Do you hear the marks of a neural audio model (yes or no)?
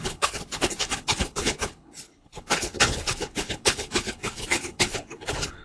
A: yes